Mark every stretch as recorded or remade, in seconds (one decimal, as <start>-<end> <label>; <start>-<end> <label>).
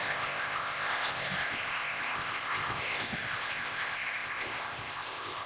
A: 0.0-5.5 remade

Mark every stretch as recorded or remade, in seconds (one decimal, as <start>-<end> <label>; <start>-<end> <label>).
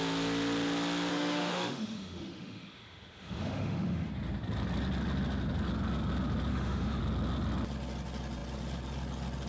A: 0.0-1.1 recorded; 1.1-4.1 remade; 4.1-6.5 recorded; 6.5-7.0 remade; 7.0-9.5 recorded